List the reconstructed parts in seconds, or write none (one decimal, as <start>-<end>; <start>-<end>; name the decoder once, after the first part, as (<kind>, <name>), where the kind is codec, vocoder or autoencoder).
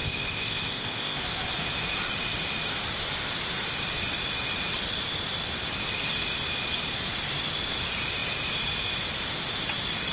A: 0.0-1.2 (codec, ZipCodec)